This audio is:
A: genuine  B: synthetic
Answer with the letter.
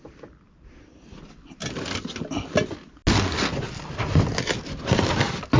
A